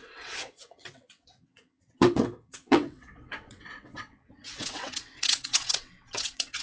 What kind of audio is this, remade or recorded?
remade